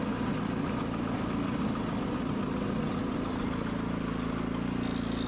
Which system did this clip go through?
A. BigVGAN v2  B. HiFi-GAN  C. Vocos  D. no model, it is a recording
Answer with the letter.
D